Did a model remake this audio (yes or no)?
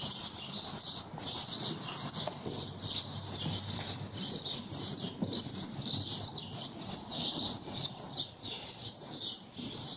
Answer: no